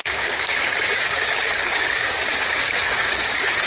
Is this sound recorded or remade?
remade